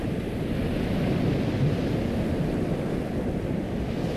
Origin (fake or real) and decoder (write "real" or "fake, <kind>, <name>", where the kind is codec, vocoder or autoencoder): real